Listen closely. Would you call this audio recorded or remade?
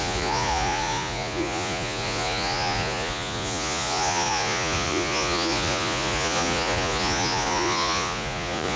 remade